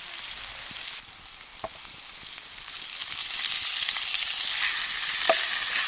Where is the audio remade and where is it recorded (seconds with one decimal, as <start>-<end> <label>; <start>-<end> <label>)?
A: 0.0-5.9 recorded